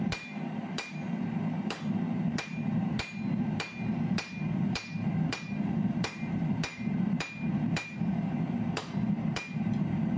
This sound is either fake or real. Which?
fake